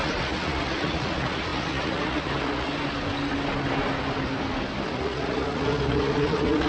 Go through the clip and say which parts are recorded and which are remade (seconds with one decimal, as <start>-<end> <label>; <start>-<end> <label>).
0.0-2.7 remade; 2.7-4.9 recorded; 4.9-6.7 remade